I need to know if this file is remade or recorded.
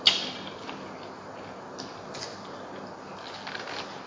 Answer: recorded